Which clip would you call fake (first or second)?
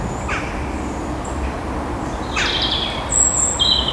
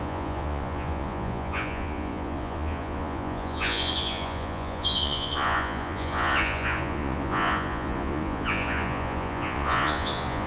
second